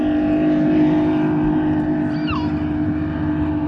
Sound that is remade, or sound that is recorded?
recorded